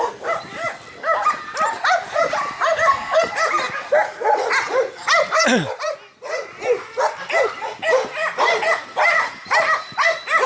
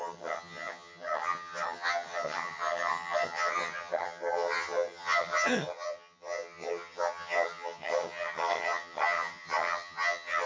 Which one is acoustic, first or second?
first